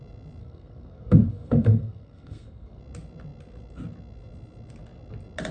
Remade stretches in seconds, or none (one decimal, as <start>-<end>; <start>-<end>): 0.4-2.8

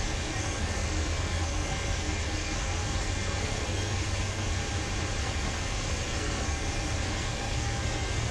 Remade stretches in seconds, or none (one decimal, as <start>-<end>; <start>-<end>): 0.0-4.6; 5.2-8.3

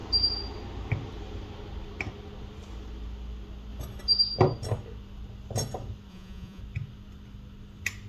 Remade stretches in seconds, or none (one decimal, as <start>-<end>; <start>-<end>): 6.1-6.6